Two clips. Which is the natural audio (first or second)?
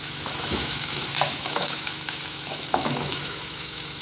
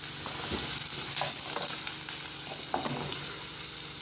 second